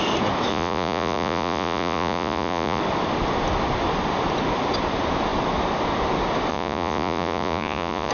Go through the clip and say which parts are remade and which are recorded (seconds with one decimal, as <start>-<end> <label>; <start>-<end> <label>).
0.0-0.5 recorded; 0.5-2.8 remade; 2.8-6.5 recorded; 6.5-8.1 remade